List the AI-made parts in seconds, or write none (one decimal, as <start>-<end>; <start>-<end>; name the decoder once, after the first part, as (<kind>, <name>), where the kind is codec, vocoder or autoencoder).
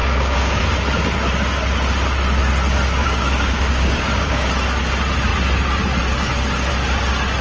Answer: 0.0-0.6 (codec, DAC); 3.0-4.5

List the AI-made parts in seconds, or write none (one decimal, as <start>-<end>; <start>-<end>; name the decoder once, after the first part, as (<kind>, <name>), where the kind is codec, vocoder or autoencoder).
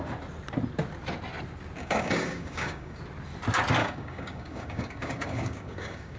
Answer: 1.8-3.0 (codec, DAC); 3.8-6.2